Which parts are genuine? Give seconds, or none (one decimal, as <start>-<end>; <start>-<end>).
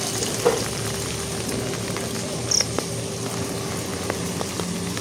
0.0-3.9